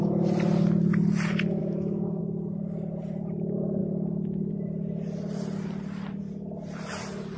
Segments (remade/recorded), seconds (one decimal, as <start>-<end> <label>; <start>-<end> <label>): 0.0-1.6 recorded; 1.6-2.2 remade; 2.2-7.4 recorded